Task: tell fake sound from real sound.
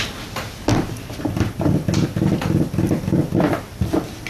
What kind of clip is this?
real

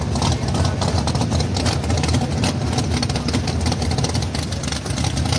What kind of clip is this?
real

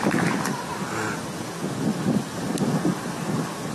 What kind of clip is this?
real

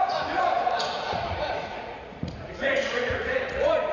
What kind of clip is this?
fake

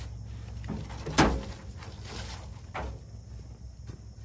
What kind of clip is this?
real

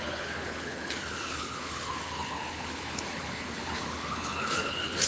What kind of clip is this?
fake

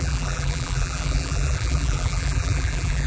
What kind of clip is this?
fake